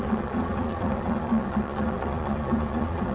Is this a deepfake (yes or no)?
yes